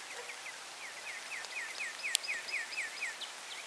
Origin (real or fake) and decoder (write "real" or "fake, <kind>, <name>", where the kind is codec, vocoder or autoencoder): real